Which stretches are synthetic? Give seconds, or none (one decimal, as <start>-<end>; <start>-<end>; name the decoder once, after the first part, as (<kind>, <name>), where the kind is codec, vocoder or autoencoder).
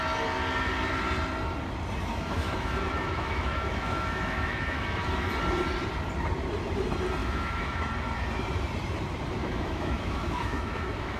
2.1-5.3 (autoencoder, DAC-VAE); 7.2-7.8; 9.4-11.2